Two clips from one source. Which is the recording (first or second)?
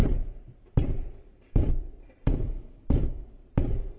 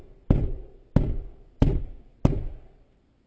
second